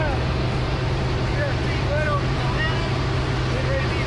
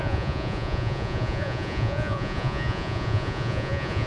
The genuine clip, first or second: first